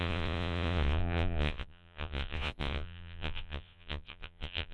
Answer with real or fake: fake